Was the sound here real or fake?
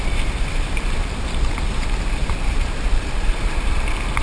fake